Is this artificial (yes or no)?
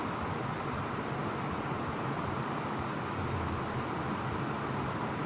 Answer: no